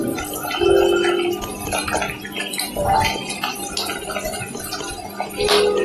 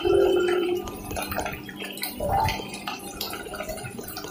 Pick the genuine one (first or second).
first